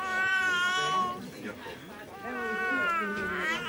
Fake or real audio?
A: fake